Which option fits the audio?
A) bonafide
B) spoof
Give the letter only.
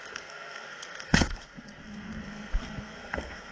B